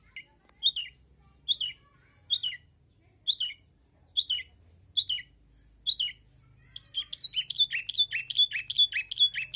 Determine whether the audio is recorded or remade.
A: recorded